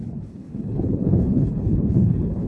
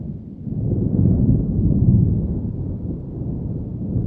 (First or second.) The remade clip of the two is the first